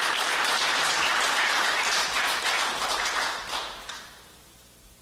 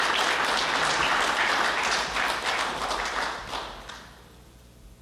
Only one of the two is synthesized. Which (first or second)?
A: first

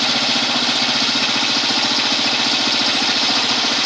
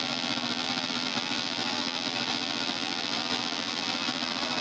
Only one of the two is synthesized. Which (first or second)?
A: second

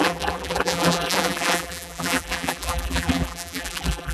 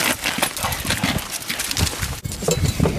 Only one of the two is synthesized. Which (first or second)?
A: first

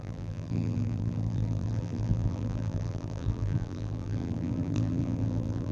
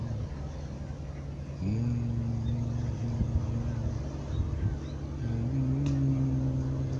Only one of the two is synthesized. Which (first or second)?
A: first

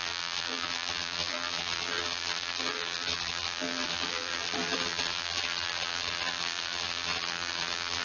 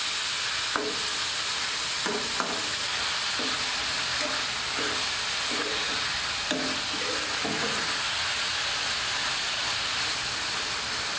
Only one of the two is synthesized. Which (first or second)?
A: first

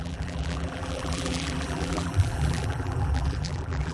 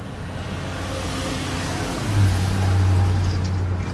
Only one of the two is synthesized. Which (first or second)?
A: first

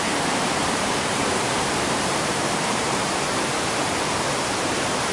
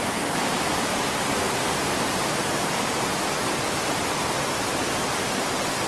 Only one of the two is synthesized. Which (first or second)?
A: first